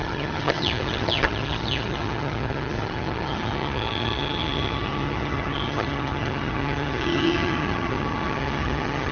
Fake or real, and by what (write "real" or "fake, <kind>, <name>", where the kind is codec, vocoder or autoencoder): fake, vocoder, HiFi-GAN